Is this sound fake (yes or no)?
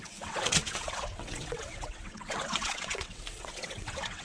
yes